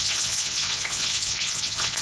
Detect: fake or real fake